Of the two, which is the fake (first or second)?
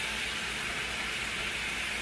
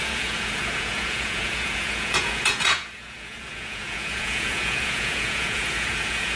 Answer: second